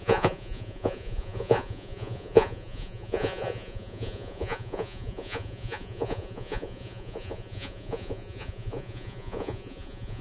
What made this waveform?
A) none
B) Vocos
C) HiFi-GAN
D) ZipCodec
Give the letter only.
B